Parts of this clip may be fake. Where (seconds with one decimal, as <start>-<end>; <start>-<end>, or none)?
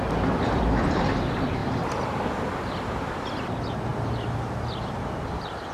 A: 0.0-1.6; 2.8-3.9; 5.1-5.7